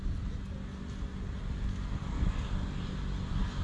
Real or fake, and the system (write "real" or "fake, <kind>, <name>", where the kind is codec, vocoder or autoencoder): real